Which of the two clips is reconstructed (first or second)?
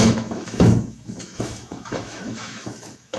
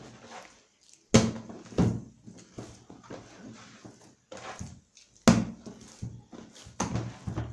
first